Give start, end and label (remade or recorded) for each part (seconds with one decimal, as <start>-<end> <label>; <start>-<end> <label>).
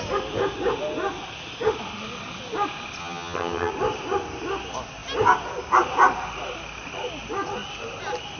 0.0-3.0 recorded; 3.0-3.7 remade; 3.7-8.4 recorded